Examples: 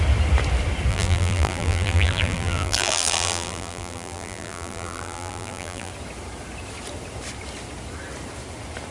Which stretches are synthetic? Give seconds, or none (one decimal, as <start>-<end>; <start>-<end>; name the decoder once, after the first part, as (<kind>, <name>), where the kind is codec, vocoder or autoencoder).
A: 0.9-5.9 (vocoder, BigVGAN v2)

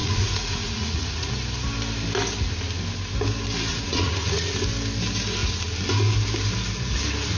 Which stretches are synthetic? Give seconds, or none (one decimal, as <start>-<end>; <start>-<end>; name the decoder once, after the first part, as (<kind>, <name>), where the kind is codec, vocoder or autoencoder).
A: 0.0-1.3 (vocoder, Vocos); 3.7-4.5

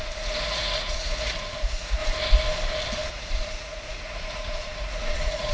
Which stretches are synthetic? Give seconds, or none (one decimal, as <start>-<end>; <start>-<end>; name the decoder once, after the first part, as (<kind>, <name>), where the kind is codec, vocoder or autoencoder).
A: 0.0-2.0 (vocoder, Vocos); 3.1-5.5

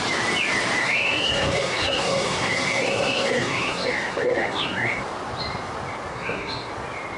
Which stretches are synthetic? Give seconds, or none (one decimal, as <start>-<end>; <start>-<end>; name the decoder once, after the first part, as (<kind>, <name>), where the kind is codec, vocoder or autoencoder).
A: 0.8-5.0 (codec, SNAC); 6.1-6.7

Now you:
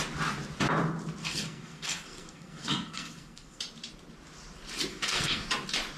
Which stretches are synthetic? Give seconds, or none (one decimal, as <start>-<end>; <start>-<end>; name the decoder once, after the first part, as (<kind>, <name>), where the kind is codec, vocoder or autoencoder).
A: 1.2-3.6 (codec, SNAC); 4.9-5.5